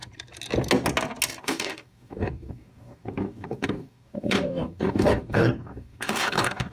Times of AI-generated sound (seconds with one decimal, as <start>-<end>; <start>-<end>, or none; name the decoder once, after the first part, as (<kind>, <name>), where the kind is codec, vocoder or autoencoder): 1.4-6.7 (codec, DAC)